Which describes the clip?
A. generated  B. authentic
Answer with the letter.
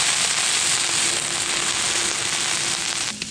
B